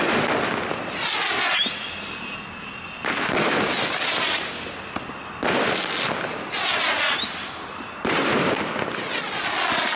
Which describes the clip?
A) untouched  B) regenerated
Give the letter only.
A